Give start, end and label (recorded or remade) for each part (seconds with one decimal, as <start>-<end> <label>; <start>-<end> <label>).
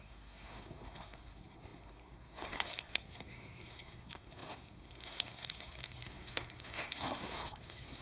0.0-8.0 remade